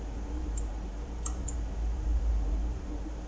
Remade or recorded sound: remade